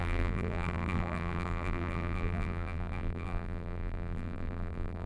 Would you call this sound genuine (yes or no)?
no